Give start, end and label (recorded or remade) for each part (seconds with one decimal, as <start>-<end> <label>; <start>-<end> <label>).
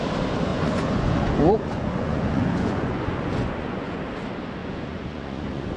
0.0-0.5 recorded; 0.5-4.0 remade; 4.0-4.6 recorded; 4.6-5.8 remade